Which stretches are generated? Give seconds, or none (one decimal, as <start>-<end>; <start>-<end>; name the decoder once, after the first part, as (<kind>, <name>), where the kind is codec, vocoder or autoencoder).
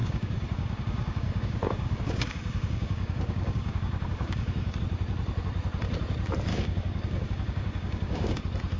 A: 0.0-4.8 (codec, DAC); 6.5-8.4